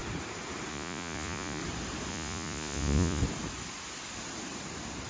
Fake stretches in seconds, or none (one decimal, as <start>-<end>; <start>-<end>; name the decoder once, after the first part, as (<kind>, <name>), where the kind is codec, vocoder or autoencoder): 0.7-1.6 (vocoder, Vocos); 2.1-3.2

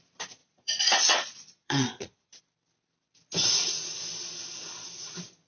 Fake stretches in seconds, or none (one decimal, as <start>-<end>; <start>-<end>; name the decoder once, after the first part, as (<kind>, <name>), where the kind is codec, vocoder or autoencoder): 0.4-2.4 (vocoder, Vocos)

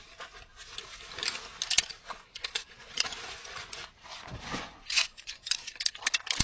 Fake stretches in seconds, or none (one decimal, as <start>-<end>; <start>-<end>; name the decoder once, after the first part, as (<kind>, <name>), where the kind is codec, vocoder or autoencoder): 1.9-5.7 (vocoder, Vocos)